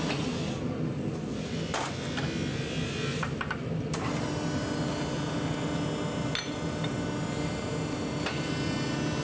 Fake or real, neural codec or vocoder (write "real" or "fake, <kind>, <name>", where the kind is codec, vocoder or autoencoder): real